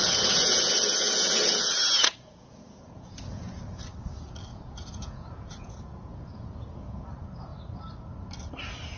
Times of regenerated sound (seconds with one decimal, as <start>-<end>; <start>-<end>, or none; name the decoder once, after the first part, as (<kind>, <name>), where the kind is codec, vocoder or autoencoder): 0.0-3.6 (vocoder, Vocos); 4.5-7.1